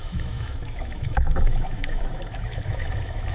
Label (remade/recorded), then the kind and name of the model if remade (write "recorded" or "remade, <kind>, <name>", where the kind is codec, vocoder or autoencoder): remade, autoencoder, DAC-VAE